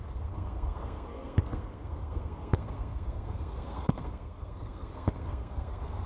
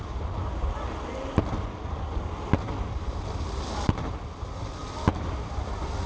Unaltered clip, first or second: second